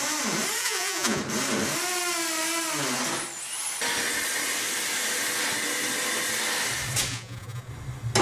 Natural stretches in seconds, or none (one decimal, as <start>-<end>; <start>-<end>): 0.0-0.6; 1.2-7.1; 7.7-8.2